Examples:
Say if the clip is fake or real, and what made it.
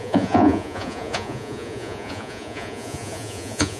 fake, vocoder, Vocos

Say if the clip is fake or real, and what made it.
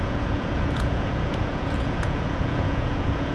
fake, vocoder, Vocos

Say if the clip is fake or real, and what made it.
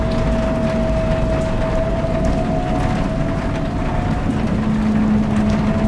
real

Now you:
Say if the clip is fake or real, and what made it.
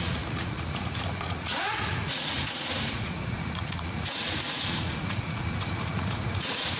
fake, vocoder, Vocos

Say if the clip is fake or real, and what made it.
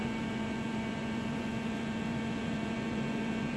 fake, vocoder, Vocos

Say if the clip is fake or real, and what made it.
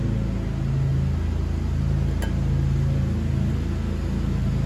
real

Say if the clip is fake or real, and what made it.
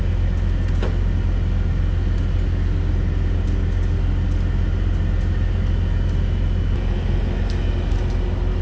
real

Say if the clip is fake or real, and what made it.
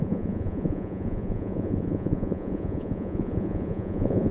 fake, vocoder, Vocos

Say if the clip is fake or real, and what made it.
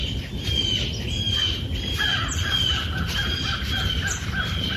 real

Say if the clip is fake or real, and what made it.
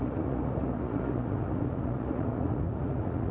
fake, vocoder, Vocos